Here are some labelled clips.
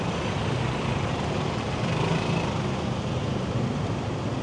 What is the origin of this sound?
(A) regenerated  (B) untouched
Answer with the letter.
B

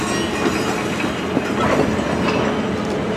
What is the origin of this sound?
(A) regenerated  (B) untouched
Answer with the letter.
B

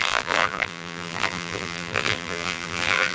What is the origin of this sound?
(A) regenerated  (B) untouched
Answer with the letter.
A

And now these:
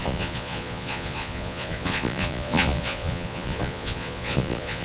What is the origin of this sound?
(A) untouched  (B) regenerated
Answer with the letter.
B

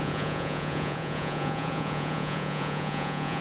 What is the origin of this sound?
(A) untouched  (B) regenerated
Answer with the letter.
B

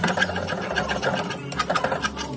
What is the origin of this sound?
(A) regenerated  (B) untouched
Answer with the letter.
B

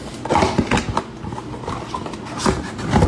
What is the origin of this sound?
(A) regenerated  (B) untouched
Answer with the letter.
B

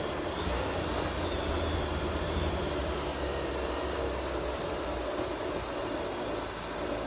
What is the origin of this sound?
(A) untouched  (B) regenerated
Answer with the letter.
A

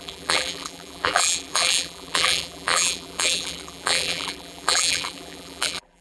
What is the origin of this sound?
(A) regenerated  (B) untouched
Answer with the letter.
A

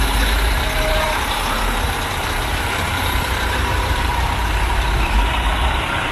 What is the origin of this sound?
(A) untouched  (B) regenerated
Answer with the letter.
B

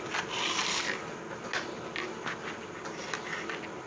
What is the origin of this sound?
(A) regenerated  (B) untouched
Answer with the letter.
B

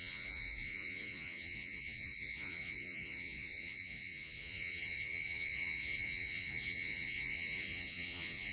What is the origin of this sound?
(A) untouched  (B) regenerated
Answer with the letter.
B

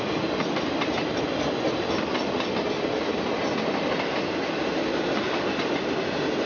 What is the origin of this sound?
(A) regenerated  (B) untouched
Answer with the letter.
B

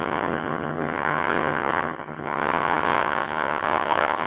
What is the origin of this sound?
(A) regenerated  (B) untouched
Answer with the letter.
A